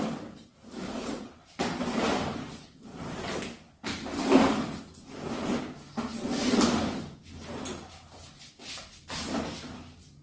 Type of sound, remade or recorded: recorded